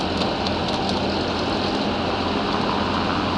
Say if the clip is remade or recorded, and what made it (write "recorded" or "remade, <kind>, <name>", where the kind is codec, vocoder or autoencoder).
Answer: recorded